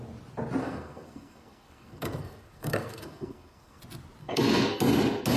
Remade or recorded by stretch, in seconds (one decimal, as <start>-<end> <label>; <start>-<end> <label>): 0.0-0.6 recorded; 0.6-3.8 remade; 3.8-4.2 recorded; 4.2-4.8 remade; 4.8-5.4 recorded